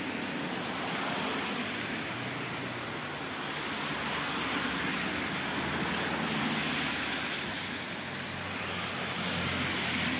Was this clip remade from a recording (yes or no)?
no